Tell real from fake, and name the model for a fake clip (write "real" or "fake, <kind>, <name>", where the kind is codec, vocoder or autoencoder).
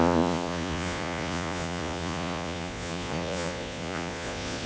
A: fake, vocoder, Vocos